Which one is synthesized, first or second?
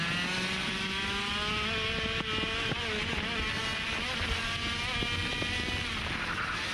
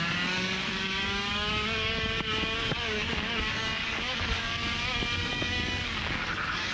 second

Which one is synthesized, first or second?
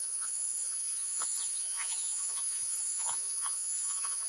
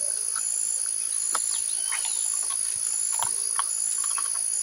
first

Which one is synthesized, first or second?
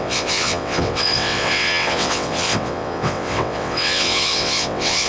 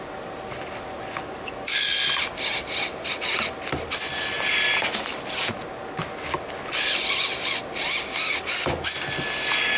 first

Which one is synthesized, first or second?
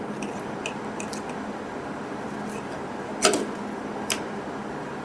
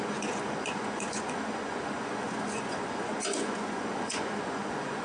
second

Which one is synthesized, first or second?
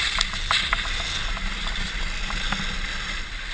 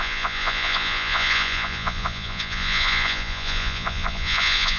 second